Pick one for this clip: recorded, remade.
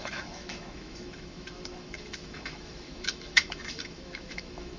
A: remade